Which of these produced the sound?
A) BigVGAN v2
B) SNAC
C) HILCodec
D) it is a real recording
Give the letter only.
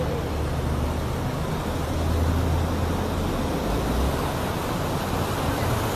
D